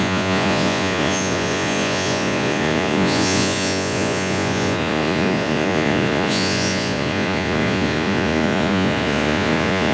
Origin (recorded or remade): remade